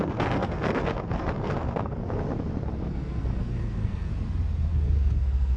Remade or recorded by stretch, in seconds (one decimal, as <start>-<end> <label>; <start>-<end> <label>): 0.0-2.0 remade; 2.0-2.9 recorded; 2.9-4.1 remade; 4.1-4.7 recorded; 4.7-5.6 remade